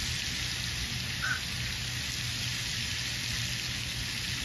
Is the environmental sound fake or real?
real